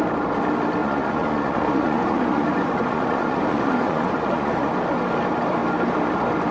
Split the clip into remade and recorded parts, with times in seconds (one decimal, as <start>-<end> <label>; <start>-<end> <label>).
0.0-0.8 recorded; 0.8-4.7 remade; 4.7-6.5 recorded